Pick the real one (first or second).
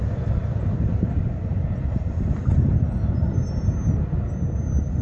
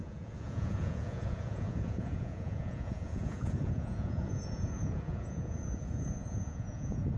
first